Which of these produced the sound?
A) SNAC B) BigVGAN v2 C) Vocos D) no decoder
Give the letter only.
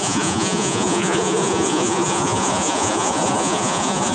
C